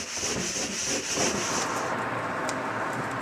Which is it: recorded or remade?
recorded